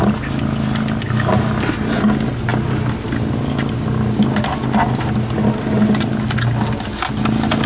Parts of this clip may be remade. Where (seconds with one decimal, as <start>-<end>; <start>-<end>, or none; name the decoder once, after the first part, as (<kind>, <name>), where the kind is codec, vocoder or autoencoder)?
none